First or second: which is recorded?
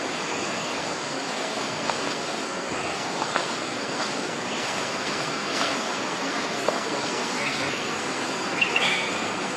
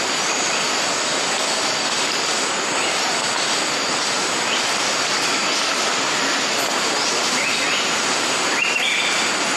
second